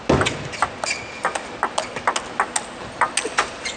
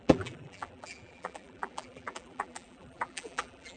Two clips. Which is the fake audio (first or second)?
second